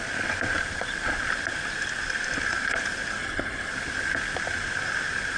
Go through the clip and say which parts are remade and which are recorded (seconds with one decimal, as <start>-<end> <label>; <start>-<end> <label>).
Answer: 0.0-3.2 recorded; 3.2-3.7 remade; 3.7-5.4 recorded